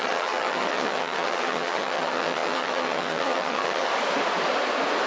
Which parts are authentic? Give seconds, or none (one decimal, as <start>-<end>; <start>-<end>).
3.9-5.1